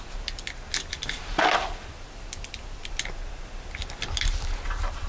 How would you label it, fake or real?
real